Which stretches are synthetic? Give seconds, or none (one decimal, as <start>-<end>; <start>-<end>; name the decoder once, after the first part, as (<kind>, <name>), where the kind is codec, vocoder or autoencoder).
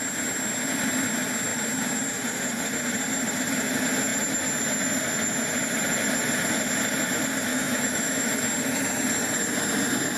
7.5-8.3 (autoencoder, DAC-VAE)